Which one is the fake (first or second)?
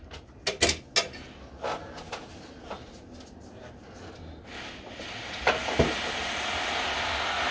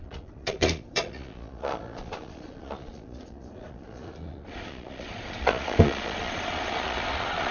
second